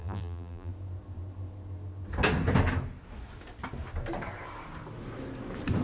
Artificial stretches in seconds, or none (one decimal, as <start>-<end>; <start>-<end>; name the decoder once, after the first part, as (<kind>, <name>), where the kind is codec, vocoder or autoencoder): 0.0-0.7 (vocoder, BigVGAN v2)